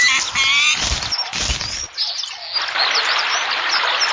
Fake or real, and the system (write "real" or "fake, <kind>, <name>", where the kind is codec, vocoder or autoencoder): real